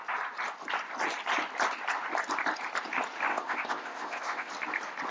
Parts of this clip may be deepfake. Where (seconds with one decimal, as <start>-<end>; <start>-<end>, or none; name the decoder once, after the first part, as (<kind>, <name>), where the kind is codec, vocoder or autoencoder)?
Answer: 3.3-4.5 (codec, ZipCodec)